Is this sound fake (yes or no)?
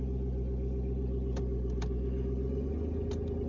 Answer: no